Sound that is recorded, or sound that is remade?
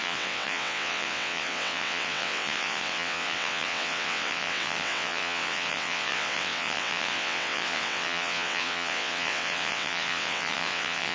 remade